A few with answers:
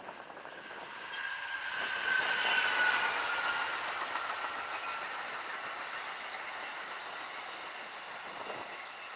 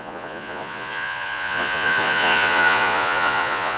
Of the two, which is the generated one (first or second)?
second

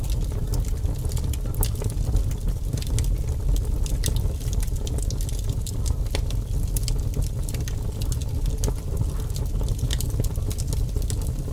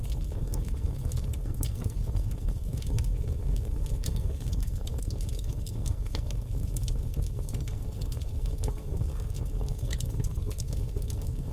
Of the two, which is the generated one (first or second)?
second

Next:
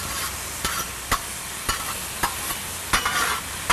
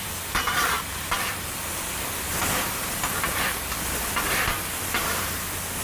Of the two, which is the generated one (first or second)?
second